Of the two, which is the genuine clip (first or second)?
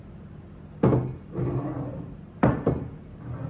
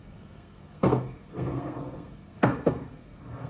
first